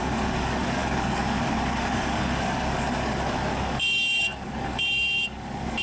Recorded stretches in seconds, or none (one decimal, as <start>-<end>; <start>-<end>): none